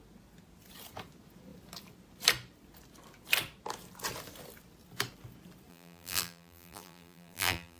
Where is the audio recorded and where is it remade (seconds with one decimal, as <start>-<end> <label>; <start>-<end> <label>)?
0.0-5.7 recorded; 5.7-7.8 remade